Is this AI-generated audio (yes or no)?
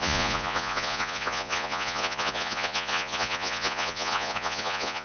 yes